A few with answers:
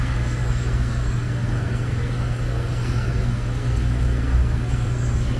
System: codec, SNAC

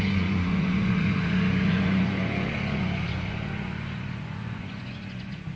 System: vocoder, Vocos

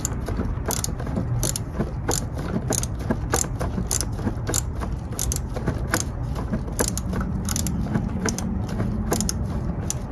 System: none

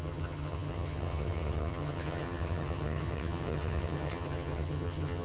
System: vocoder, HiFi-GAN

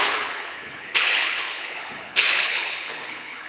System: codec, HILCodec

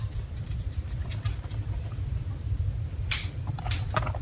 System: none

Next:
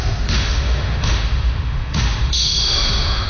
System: autoencoder, DAC-VAE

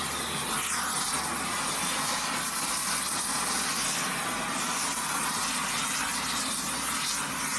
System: none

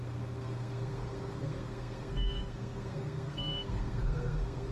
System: codec, SNAC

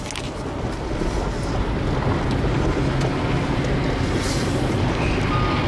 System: none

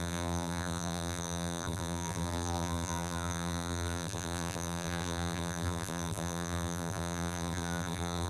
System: vocoder, BigVGAN v2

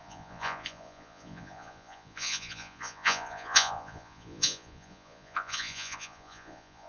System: vocoder, Vocos